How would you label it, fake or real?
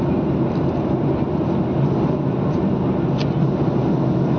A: real